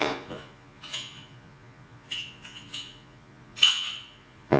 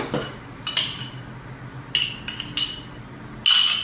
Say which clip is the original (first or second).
second